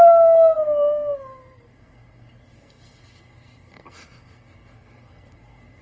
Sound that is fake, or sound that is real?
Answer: fake